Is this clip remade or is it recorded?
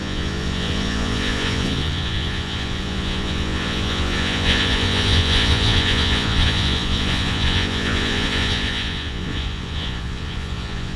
remade